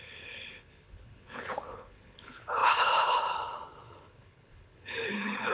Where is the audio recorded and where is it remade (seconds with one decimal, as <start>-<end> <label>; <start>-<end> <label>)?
0.0-5.5 remade